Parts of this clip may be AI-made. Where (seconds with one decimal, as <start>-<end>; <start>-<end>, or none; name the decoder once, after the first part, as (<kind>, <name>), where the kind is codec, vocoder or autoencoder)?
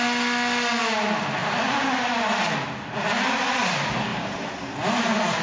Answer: 1.4-2.4 (vocoder, BigVGAN v2); 4.1-4.7